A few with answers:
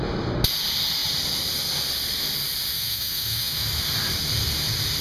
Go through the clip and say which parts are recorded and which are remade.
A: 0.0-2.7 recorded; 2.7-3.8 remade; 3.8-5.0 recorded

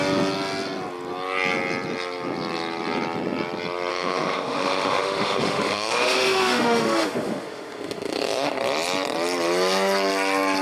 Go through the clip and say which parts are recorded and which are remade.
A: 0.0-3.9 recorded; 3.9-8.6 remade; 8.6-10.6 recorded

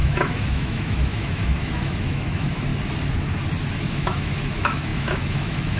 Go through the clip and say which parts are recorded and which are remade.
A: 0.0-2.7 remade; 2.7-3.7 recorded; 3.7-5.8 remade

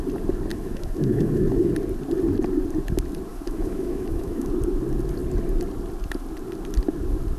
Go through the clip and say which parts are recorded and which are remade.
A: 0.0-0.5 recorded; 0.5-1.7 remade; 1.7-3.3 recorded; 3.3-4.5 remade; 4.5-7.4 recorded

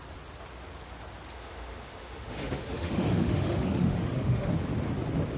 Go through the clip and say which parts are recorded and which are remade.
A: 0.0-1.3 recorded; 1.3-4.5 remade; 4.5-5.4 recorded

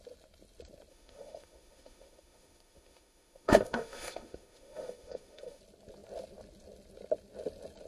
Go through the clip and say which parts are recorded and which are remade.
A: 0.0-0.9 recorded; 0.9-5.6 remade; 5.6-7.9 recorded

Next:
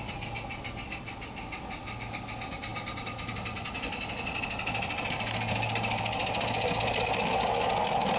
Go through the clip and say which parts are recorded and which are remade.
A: 0.0-8.2 recorded

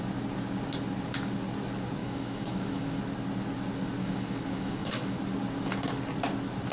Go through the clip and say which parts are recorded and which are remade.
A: 0.0-2.0 recorded; 2.0-3.0 remade; 3.0-4.0 recorded; 4.0-5.2 remade; 5.2-6.7 recorded